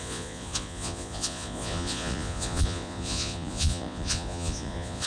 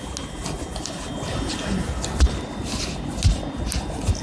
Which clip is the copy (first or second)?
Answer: first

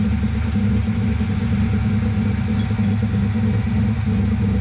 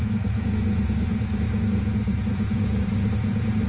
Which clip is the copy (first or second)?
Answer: second